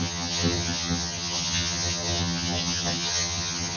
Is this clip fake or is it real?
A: fake